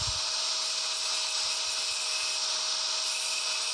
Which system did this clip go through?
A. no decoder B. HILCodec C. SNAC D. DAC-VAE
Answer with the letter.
A